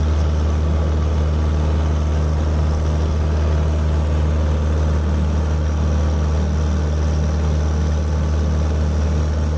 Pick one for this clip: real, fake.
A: real